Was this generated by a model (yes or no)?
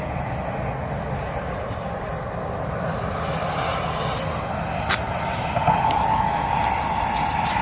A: no